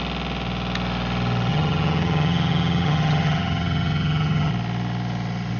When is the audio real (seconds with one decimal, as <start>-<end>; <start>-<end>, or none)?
0.0-1.5; 4.5-5.6